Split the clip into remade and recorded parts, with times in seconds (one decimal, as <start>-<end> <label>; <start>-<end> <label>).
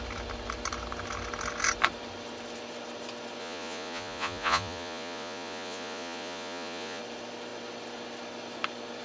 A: 0.0-3.4 recorded; 3.4-7.0 remade; 7.0-9.0 recorded